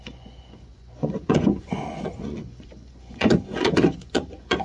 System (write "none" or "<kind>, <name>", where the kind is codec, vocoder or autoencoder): vocoder, Vocos